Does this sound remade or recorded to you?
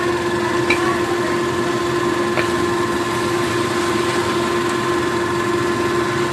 recorded